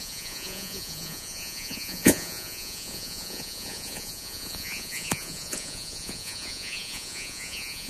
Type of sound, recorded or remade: remade